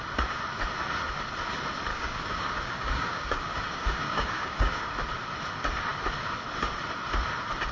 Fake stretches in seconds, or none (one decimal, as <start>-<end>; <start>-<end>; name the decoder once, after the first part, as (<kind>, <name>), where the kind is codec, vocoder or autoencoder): 1.9-4.9 (codec, DAC)